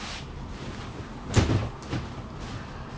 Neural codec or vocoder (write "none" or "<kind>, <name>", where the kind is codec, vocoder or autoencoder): none